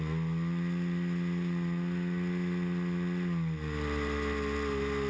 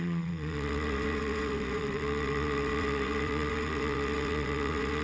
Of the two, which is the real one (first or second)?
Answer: first